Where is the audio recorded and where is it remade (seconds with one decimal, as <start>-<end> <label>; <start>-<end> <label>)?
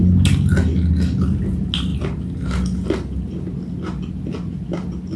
0.0-5.2 recorded